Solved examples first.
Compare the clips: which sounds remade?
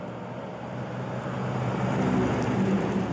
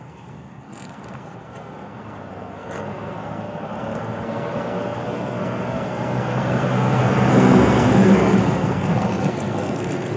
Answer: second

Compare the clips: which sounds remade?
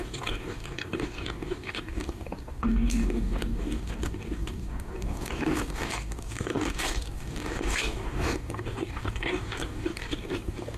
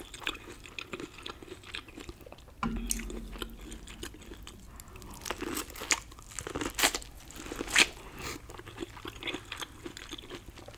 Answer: first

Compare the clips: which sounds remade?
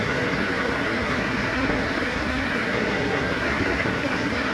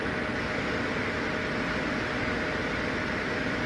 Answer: first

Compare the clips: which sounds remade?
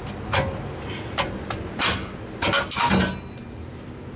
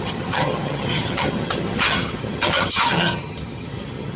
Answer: second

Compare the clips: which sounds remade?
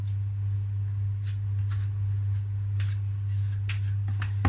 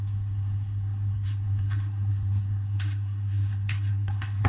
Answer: second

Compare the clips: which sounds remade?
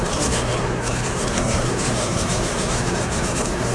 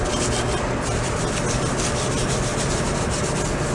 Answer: first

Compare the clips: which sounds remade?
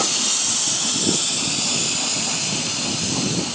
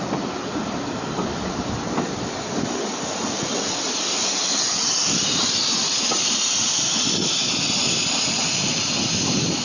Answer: second